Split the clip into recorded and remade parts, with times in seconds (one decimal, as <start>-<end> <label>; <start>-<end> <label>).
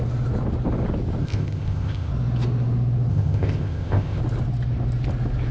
0.0-1.2 recorded; 1.2-2.1 remade; 2.1-3.1 recorded; 3.1-4.2 remade; 4.2-5.5 recorded